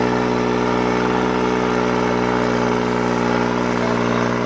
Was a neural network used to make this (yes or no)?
no